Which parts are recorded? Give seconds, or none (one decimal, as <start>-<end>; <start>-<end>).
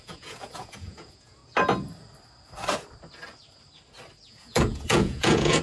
1.4-4.3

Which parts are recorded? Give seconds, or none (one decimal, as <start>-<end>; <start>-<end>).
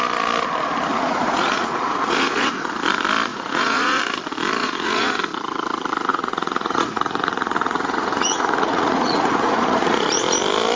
0.0-0.9; 2.7-3.3; 4.0-4.6; 5.2-6.1; 10.2-10.8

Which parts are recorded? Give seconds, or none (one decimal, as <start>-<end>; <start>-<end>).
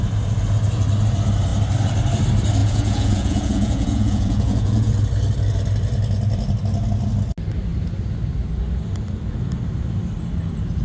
0.0-2.6; 4.9-10.8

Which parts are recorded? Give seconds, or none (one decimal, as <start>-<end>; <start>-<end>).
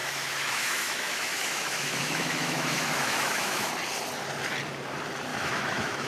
3.7-5.3